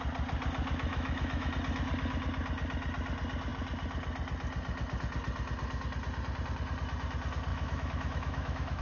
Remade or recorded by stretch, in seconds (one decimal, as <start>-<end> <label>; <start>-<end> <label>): 0.0-0.9 recorded; 0.9-1.5 remade; 1.5-7.5 recorded; 7.5-8.8 remade